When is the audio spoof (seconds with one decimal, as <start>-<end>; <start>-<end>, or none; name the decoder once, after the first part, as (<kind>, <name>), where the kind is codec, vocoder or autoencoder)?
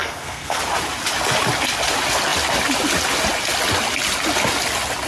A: 0.0-0.6 (codec, SNAC)